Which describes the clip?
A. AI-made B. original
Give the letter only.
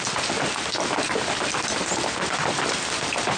B